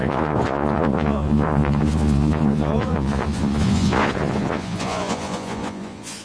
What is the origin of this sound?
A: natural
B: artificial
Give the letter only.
B